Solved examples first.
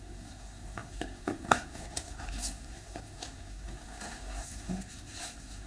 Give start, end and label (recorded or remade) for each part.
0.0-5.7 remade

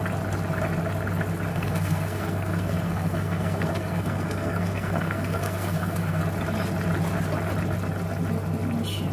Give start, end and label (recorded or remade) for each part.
0.0-1.5 recorded; 1.5-6.2 remade; 6.2-9.1 recorded

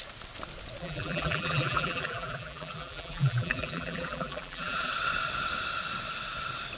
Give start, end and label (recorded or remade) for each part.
0.0-0.8 recorded; 0.8-4.9 remade; 4.9-6.8 recorded

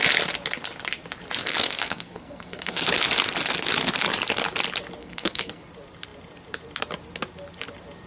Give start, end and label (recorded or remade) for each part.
0.0-1.4 recorded; 1.4-2.9 remade; 2.9-5.0 recorded; 5.0-5.6 remade; 5.6-8.1 recorded

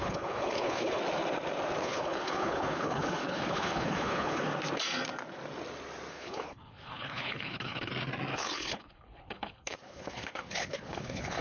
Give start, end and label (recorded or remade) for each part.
0.0-1.0 remade; 1.0-1.8 recorded; 1.8-4.4 remade; 4.4-6.1 recorded; 6.1-7.9 remade; 7.9-8.3 recorded; 8.3-11.4 remade

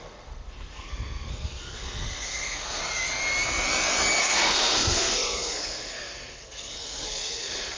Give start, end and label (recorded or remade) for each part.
0.0-2.8 remade; 2.8-4.2 recorded; 4.2-7.8 remade

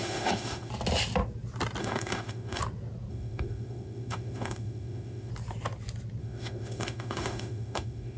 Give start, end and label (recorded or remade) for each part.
0.0-0.7 remade; 0.7-1.8 recorded; 1.8-2.6 remade; 2.6-3.1 recorded; 3.1-5.3 remade; 5.3-6.2 recorded; 6.2-8.2 remade

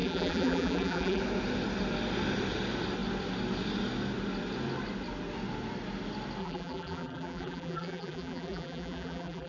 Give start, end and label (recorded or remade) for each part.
0.0-1.2 remade; 1.2-6.4 recorded; 6.4-9.5 remade